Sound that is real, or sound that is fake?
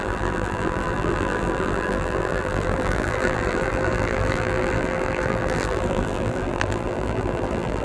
fake